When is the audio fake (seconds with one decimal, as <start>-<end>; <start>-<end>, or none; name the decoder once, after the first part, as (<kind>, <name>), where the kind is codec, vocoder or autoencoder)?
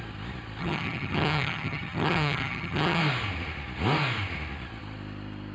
0.6-3.0 (vocoder, HiFi-GAN)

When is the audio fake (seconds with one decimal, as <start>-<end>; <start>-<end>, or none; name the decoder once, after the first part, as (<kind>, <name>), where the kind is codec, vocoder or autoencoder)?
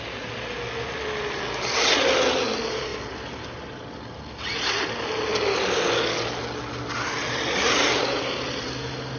none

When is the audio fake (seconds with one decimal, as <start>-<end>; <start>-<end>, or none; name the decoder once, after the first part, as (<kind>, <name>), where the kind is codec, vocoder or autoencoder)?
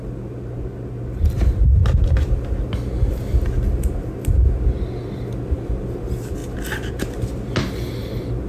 none